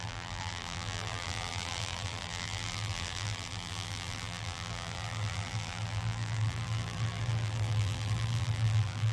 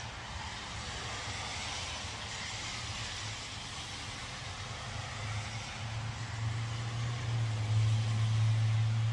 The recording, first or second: second